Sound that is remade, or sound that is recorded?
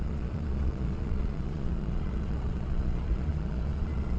remade